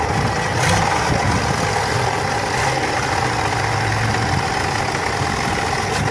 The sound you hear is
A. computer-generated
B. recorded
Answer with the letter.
B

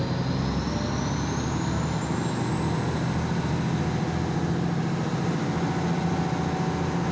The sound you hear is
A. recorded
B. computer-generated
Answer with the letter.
A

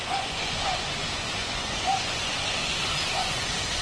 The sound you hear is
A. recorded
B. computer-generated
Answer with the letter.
B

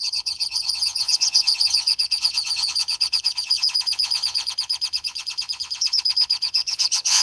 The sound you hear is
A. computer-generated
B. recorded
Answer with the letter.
A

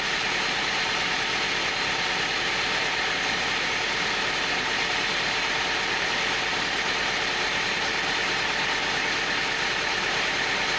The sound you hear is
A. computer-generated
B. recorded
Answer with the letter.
B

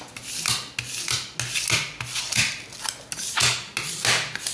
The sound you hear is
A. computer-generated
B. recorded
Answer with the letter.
B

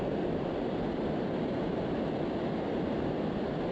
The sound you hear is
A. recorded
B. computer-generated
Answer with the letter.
A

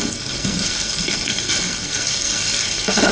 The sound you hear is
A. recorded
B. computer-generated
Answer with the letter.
B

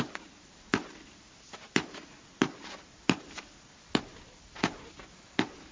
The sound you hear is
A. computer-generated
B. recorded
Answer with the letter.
B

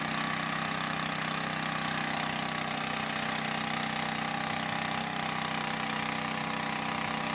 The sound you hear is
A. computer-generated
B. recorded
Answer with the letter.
B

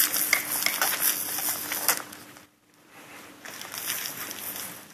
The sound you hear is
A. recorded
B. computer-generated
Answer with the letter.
A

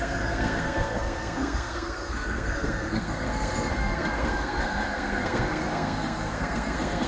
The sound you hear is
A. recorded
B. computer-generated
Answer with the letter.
B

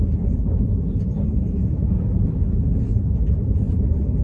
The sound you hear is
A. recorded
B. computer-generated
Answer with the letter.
A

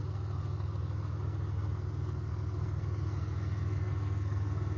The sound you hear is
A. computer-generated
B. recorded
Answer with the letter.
A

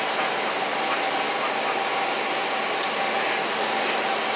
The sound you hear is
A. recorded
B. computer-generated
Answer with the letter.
A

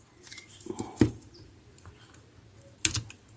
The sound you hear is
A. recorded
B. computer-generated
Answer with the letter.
A